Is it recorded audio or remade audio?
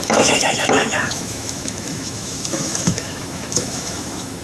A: remade